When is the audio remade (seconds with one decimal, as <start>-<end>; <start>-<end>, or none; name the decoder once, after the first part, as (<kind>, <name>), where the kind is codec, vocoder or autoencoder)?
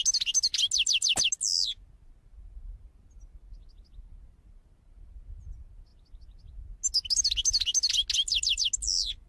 none